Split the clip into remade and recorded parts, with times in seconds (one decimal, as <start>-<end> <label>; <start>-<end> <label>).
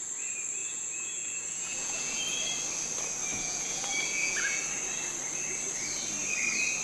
0.0-0.6 recorded; 0.6-2.2 remade; 2.2-3.3 recorded; 3.3-4.6 remade; 4.6-6.8 recorded